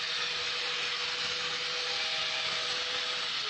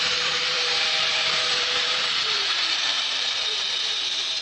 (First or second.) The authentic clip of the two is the first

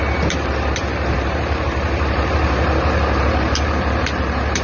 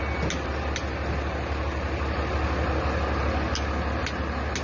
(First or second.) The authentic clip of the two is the second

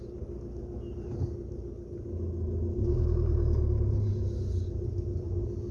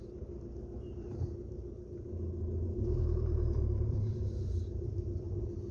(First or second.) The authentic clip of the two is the first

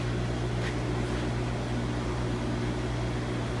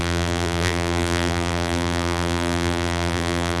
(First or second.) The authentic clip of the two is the first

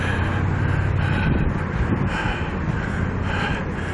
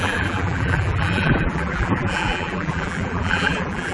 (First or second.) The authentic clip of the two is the first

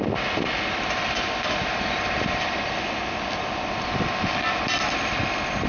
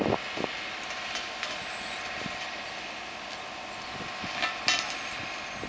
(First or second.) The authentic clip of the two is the second